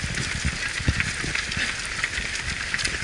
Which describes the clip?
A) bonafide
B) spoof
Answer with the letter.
A